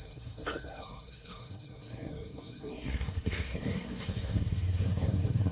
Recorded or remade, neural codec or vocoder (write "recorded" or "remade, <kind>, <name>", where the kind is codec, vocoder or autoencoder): remade, codec, SNAC